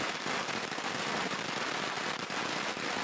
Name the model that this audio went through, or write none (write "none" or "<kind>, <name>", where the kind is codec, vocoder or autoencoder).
none